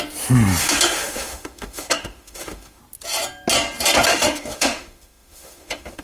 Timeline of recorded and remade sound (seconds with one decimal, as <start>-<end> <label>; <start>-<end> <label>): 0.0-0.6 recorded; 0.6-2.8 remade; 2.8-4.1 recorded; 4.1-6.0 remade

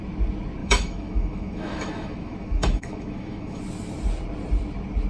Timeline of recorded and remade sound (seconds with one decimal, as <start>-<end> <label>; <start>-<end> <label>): 0.0-0.6 recorded; 0.6-3.6 remade; 3.6-5.1 recorded

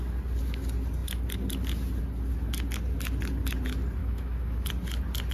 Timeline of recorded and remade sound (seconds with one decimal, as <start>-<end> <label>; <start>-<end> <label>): 0.0-4.0 recorded; 4.0-4.7 remade; 4.7-5.3 recorded

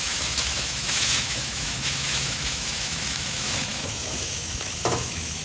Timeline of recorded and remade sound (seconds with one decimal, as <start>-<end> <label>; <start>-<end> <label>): 0.0-5.4 remade

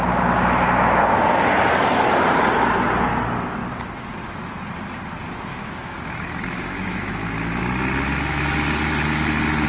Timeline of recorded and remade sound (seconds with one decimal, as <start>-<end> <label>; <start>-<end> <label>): 0.0-5.5 recorded; 5.5-7.6 remade; 7.6-9.7 recorded

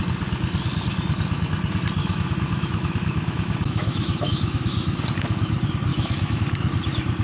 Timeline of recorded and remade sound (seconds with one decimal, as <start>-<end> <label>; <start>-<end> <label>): 0.0-2.0 recorded; 2.0-5.0 remade; 5.0-5.9 recorded; 5.9-6.4 remade; 6.4-7.2 recorded

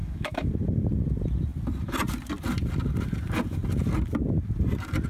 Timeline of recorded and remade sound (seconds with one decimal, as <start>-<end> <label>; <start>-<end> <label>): 0.0-0.5 remade; 0.5-5.1 recorded

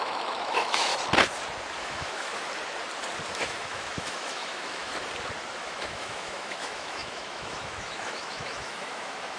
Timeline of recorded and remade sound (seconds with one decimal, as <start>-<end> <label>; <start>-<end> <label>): 0.0-0.9 remade; 0.9-1.8 recorded; 1.8-2.3 remade; 2.3-3.3 recorded; 3.3-4.9 remade; 4.9-5.5 recorded; 5.5-9.4 remade